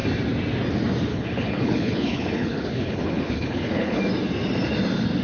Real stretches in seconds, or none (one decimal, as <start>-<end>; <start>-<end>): 0.0-1.1; 4.0-5.2